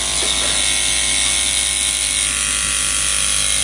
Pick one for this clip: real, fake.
real